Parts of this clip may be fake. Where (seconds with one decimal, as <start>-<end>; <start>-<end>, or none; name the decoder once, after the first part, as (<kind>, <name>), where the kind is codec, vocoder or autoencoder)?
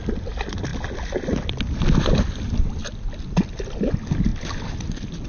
none